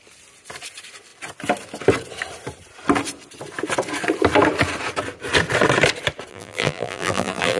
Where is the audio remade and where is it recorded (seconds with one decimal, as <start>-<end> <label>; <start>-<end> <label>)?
0.0-6.3 recorded; 6.3-7.6 remade